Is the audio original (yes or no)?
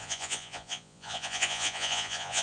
no